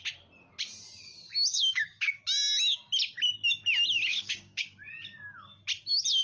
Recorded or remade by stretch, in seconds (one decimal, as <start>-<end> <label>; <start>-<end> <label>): 0.0-1.5 recorded; 1.5-2.2 remade; 2.2-4.1 recorded; 4.1-4.9 remade; 4.9-6.2 recorded

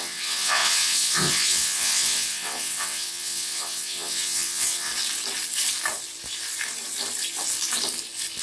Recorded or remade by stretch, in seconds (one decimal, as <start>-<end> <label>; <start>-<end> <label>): 0.0-4.9 remade; 4.9-8.4 recorded

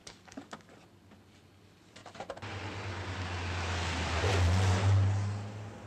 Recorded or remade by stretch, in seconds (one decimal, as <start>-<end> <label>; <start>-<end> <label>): 0.0-0.7 remade; 0.7-5.9 recorded

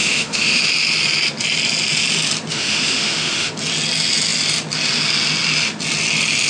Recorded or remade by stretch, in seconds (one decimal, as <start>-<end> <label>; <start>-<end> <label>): 0.0-0.6 remade; 0.6-2.5 recorded; 2.5-3.5 remade; 3.5-6.5 recorded

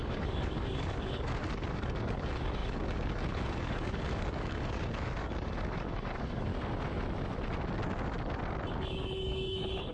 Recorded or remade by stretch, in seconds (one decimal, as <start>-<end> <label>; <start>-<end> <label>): 0.0-6.5 remade; 6.5-8.8 recorded; 8.8-9.9 remade

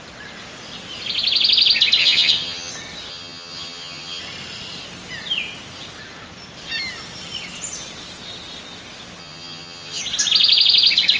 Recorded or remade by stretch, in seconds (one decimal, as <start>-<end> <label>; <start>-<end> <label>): 0.0-2.0 recorded; 2.0-2.7 remade; 2.7-3.1 recorded; 3.1-4.2 remade; 4.2-9.2 recorded; 9.2-10.0 remade; 10.0-11.2 recorded